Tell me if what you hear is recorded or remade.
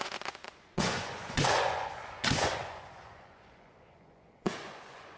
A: remade